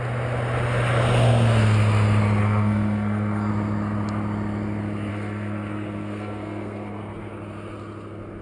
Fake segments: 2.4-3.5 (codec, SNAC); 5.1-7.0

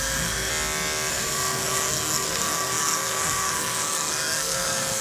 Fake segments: 0.0-0.5 (codec, SNAC); 1.1-5.0

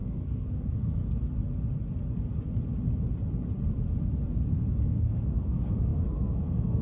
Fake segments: 0.0-1.0 (codec, SNAC); 4.9-6.8

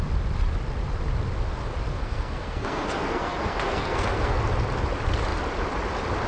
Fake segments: 1.9-4.4 (codec, SNAC)

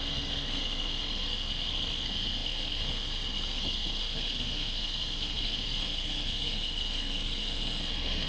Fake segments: 0.0-8.3 (codec, SNAC)

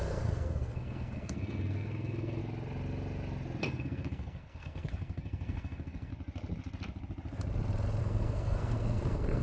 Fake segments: 0.0-2.4 (codec, SNAC); 3.6-6.1; 8.0-9.4

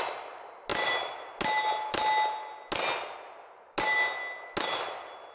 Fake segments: none